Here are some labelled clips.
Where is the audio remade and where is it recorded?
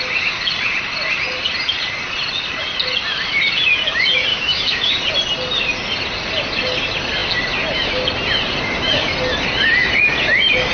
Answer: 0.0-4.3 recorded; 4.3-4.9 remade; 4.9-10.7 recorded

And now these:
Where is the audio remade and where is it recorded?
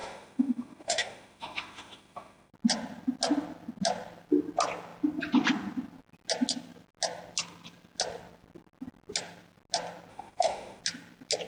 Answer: 0.0-2.5 remade; 2.5-10.1 recorded; 10.1-10.8 remade; 10.8-11.5 recorded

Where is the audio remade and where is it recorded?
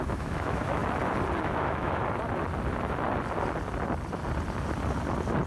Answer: 0.0-0.8 remade; 0.8-1.4 recorded; 1.4-2.0 remade; 2.0-5.5 recorded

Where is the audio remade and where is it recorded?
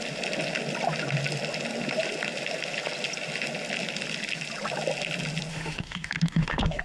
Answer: 0.0-5.5 recorded; 5.5-6.8 remade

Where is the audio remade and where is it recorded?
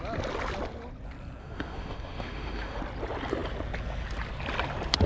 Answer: 0.0-1.4 recorded; 1.4-2.8 remade; 2.8-5.1 recorded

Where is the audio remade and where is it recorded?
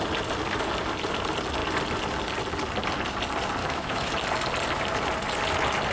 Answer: 0.0-3.6 recorded; 3.6-4.1 remade; 4.1-5.9 recorded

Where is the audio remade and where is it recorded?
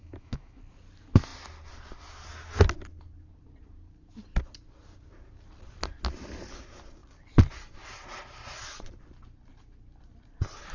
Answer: 0.0-0.6 remade; 0.6-10.7 recorded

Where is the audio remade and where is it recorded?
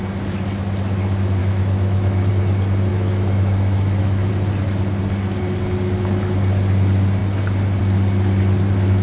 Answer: 0.0-1.4 recorded; 1.4-2.3 remade; 2.3-2.9 recorded; 2.9-4.3 remade; 4.3-9.0 recorded